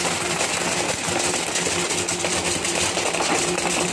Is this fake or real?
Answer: real